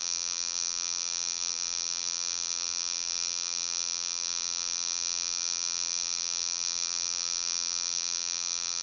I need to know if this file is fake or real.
fake